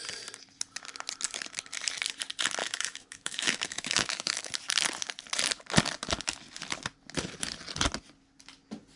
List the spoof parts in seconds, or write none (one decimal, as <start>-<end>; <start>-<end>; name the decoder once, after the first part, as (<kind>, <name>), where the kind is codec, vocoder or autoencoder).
2.6-4.5 (autoencoder, DAC-VAE)